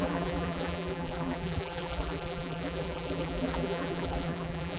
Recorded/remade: remade